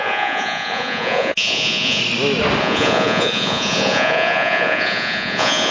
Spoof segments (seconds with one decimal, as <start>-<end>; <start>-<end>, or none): 0.0-2.0; 2.6-5.7